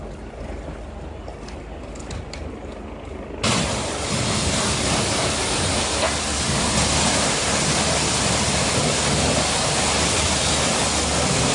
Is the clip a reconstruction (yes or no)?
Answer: no